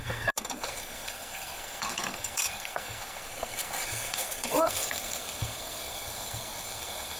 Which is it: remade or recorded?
remade